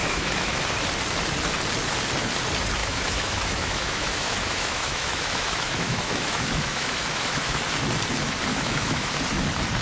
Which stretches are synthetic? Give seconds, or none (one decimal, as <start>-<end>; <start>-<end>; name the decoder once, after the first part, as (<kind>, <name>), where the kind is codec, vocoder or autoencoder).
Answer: 0.0-0.6 (autoencoder, DAC-VAE); 2.8-7.6; 8.5-9.1